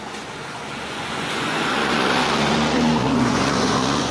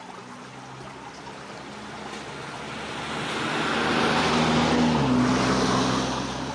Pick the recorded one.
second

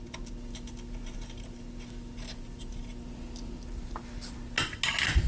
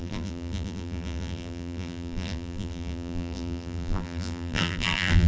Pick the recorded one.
first